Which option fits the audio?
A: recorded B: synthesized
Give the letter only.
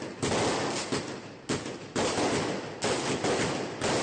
A